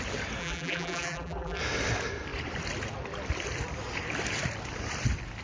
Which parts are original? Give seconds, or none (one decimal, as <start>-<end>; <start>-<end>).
0.0-0.4; 1.6-5.4

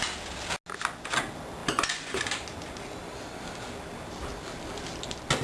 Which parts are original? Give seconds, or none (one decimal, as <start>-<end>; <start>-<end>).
0.0-1.6; 2.2-5.4

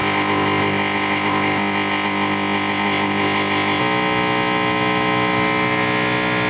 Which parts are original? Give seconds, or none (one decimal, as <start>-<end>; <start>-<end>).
3.8-6.5

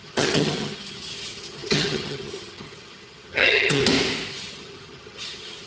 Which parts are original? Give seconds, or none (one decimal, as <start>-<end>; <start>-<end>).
3.8-4.3